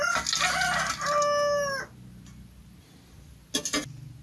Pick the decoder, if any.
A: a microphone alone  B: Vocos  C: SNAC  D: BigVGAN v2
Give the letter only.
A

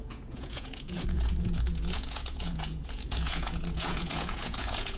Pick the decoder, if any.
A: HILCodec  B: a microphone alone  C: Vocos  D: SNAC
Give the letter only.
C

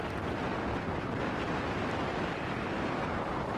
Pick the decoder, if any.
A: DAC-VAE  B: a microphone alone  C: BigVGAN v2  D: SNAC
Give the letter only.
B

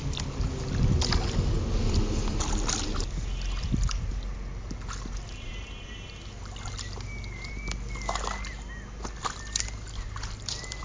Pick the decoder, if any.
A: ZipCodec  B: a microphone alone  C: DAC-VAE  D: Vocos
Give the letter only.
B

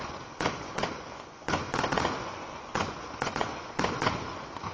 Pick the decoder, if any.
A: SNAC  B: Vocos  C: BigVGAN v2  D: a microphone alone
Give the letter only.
B